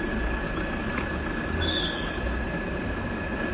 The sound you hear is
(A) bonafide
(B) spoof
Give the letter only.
A